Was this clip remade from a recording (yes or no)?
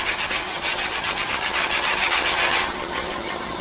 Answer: yes